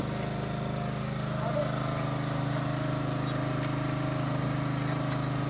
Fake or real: real